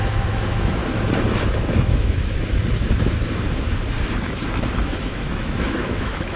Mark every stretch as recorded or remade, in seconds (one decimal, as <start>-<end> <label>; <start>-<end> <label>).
0.0-0.8 remade; 0.8-1.5 recorded; 1.5-2.4 remade; 2.4-4.8 recorded; 4.8-6.4 remade